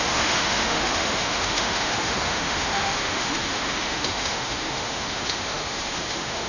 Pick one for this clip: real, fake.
fake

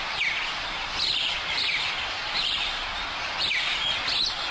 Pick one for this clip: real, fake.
real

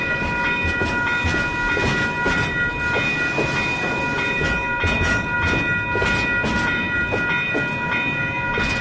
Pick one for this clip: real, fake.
real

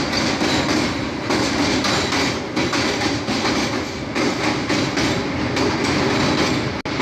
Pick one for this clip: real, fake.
real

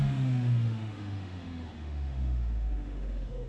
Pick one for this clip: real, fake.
fake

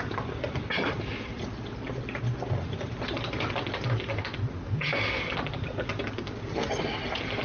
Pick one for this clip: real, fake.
real